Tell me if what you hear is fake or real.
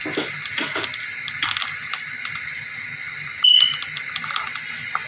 real